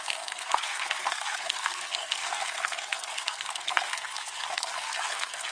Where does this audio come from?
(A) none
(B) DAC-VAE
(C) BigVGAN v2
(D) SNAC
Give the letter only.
D